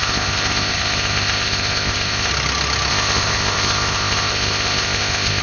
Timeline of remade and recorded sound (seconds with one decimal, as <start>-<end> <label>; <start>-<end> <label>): 0.0-2.3 remade; 2.3-2.9 recorded; 2.9-5.4 remade